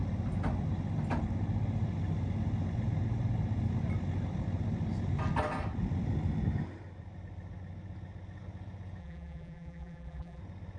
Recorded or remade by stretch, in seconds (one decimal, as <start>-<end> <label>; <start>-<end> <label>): 0.0-9.0 recorded; 9.0-10.4 remade; 10.4-10.8 recorded